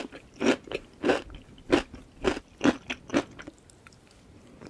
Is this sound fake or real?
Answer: real